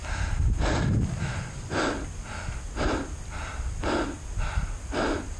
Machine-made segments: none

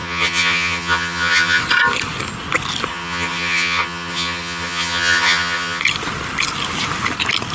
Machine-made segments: 0.0-1.6 (vocoder, HiFi-GAN); 2.9-5.8

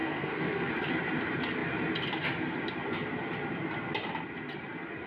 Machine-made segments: 0.0-0.7 (codec, SNAC)

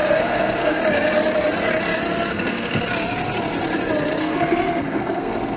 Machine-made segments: 0.0-0.8 (codec, SNAC); 2.3-2.8; 4.2-5.6

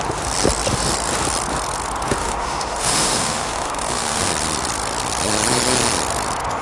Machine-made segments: 2.2-4.3 (autoencoder, DAC-VAE)